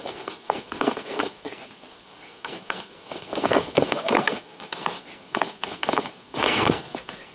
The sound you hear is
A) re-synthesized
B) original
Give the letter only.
A